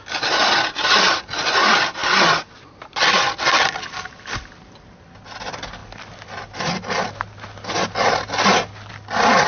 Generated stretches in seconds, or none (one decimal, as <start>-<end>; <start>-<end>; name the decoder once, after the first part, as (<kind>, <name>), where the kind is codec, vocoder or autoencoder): none